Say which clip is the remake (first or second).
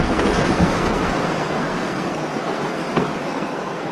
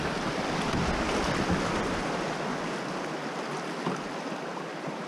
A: first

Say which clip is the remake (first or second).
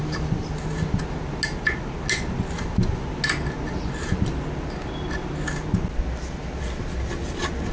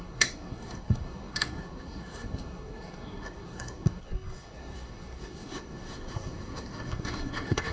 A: second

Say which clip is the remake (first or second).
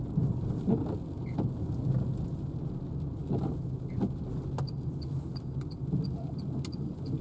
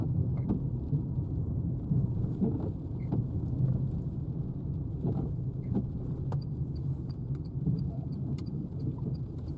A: second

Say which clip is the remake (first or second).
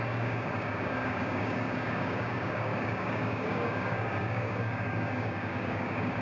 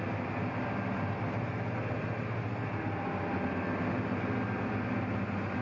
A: first